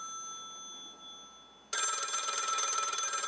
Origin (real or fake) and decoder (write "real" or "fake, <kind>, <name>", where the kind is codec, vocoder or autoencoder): real